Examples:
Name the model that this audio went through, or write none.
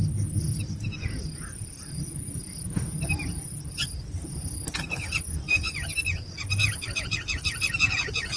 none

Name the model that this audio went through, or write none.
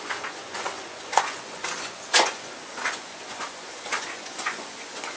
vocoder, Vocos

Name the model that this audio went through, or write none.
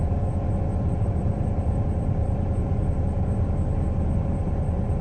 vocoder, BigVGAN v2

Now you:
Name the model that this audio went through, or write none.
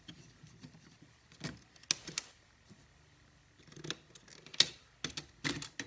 none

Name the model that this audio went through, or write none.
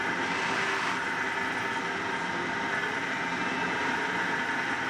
none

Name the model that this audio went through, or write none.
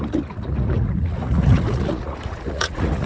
vocoder, Vocos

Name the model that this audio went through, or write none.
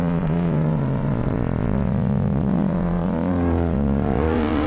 vocoder, Vocos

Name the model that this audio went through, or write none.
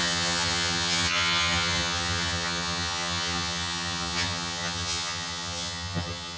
vocoder, HiFi-GAN